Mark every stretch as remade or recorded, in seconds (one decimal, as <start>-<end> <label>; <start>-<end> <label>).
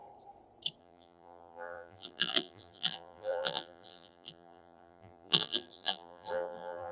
0.0-0.8 recorded; 0.8-6.9 remade